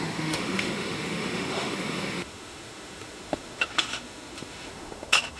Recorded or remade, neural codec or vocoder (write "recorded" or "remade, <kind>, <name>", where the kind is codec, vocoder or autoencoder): remade, autoencoder, DAC-VAE